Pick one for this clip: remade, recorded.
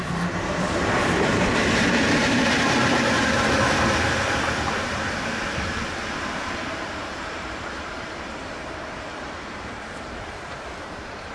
remade